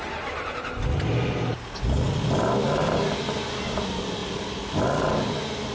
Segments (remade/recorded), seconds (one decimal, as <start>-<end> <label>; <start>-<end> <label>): 0.0-5.7 recorded

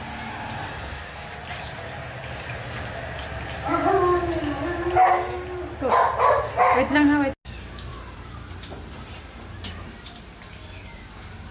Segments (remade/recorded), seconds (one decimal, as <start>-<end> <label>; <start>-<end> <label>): 0.0-7.9 recorded; 7.9-11.5 remade

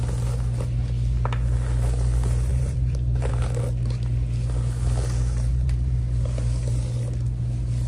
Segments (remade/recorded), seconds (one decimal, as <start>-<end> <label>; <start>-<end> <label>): 0.0-2.5 recorded; 2.5-3.3 remade; 3.3-5.5 recorded; 5.5-6.0 remade; 6.0-7.9 recorded

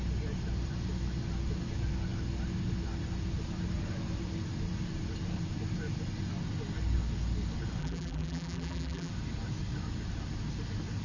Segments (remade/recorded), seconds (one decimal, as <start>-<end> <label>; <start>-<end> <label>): 0.0-7.8 recorded; 7.8-9.1 remade; 9.1-11.0 recorded